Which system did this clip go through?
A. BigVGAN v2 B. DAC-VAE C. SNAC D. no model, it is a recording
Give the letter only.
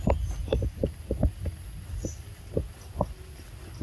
D